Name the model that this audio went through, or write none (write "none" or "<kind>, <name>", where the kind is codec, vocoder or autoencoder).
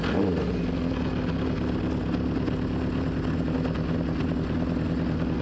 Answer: none